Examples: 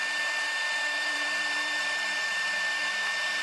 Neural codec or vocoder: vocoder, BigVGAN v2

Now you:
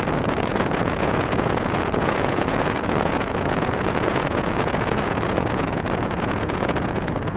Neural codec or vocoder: vocoder, Vocos